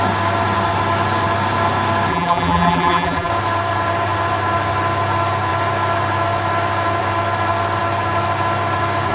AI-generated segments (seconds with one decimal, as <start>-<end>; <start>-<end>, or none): 2.1-3.3